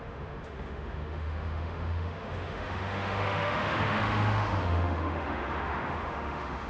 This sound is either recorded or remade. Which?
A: remade